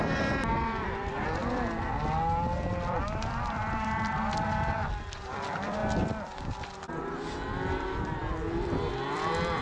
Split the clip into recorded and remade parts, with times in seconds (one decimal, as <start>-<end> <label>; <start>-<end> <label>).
0.0-1.4 remade; 1.4-2.7 recorded; 2.7-5.8 remade; 5.8-7.7 recorded; 7.7-8.2 remade; 8.2-8.9 recorded; 8.9-9.6 remade